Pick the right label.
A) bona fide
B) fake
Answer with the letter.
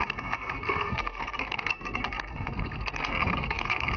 B